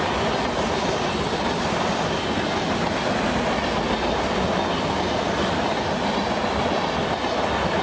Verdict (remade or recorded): recorded